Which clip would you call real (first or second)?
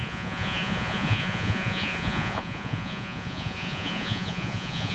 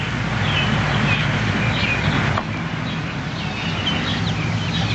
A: second